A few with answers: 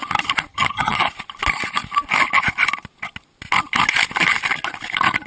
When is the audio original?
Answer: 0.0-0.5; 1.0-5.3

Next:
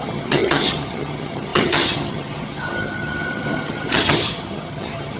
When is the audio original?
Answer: none

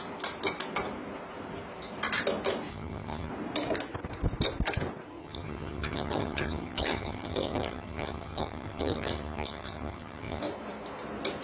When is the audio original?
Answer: 0.0-2.7; 3.3-5.2; 10.4-11.4

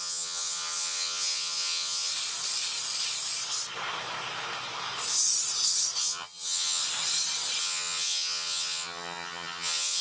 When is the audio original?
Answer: 2.1-6.0; 6.8-7.6

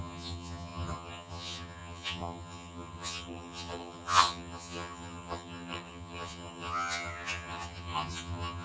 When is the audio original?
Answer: none

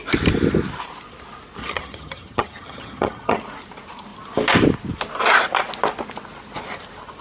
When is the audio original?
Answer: 0.0-1.6; 3.4-7.2